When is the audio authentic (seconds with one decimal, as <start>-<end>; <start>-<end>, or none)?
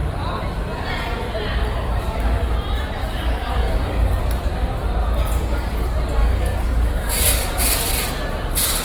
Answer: 0.0-1.6; 2.5-3.0; 4.2-6.2; 7.9-8.8